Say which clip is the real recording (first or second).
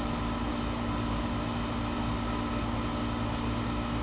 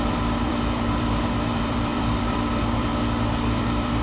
first